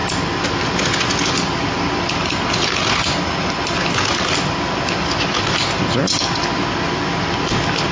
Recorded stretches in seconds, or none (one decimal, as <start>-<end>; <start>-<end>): 0.0-7.9